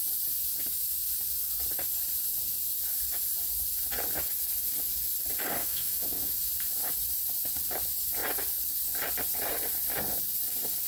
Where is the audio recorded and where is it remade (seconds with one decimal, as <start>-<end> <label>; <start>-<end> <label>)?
0.0-5.6 recorded; 5.6-6.5 remade; 6.5-10.9 recorded